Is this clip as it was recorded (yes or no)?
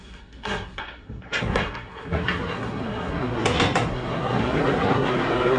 no